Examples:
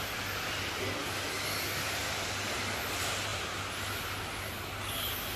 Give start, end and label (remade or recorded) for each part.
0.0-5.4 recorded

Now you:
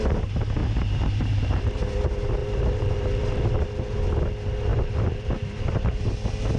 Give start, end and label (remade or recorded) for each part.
0.0-0.6 recorded; 0.6-1.6 remade; 1.6-2.4 recorded; 2.4-3.5 remade; 3.5-4.7 recorded; 4.7-6.0 remade; 6.0-6.6 recorded

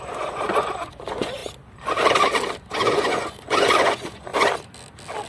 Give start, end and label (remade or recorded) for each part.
0.0-1.4 remade; 1.4-2.7 recorded; 2.7-4.3 remade; 4.3-5.3 recorded

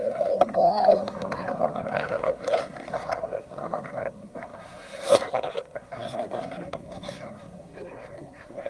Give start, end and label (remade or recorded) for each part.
0.0-8.7 remade

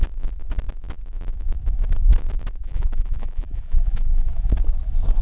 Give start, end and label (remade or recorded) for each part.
0.0-2.6 recorded; 2.6-4.5 remade; 4.5-5.2 recorded

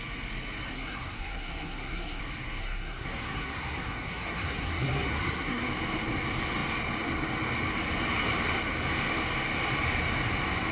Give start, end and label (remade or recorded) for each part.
0.0-0.7 recorded; 0.7-2.2 remade; 2.2-2.6 recorded; 2.6-5.6 remade; 5.6-10.7 recorded

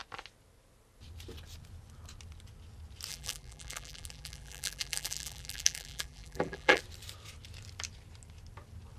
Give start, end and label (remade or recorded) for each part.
0.0-3.1 recorded; 3.1-6.8 remade; 6.8-9.0 recorded